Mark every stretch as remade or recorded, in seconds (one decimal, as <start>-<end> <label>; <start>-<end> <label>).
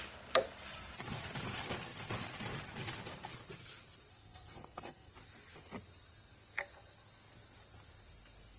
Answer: 0.0-4.1 recorded; 4.1-5.1 remade; 5.1-8.6 recorded